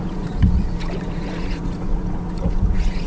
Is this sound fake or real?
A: fake